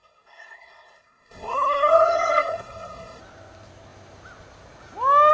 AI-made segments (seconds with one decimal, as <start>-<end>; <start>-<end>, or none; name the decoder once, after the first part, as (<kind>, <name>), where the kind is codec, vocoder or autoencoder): 0.0-3.2 (codec, SNAC)